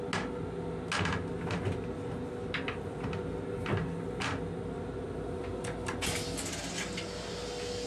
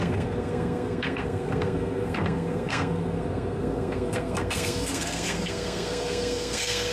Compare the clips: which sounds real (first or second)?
first